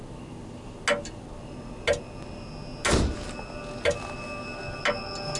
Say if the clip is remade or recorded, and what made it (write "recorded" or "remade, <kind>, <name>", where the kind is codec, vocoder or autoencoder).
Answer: recorded